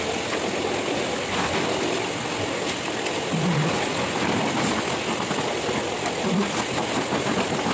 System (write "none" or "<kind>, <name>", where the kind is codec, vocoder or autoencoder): none